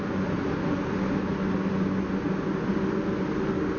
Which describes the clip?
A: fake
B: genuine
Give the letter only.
B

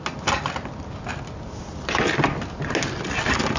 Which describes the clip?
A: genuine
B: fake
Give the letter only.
A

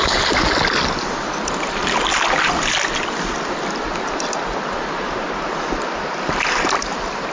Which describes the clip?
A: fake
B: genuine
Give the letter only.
B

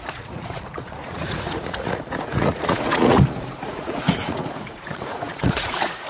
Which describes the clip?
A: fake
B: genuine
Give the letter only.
A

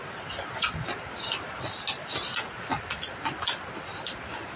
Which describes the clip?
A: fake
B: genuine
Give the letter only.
B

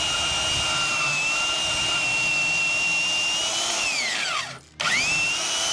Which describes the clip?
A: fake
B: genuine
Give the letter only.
B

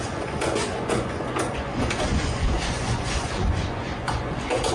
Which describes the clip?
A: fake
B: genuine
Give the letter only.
A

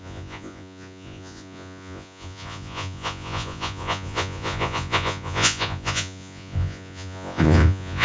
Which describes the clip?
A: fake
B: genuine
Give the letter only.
A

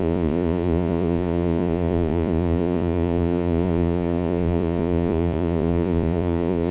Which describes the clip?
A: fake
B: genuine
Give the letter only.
A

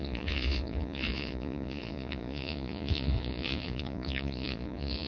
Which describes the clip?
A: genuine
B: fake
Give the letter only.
B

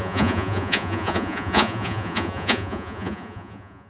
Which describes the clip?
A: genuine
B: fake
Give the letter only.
B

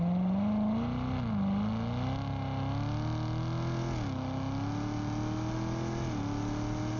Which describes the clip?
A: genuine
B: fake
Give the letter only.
A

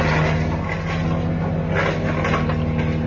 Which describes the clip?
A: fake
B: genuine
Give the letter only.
B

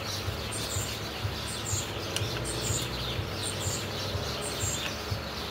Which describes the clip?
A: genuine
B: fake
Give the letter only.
A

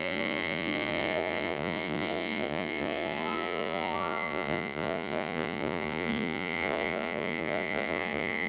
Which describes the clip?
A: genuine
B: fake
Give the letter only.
B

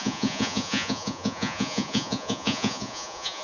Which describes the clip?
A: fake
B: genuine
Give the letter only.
A